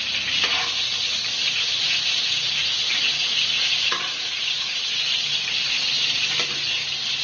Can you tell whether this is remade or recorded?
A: recorded